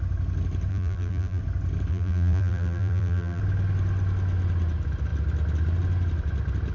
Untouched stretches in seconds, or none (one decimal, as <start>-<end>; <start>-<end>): 0.0-0.7; 1.4-1.9; 3.4-6.7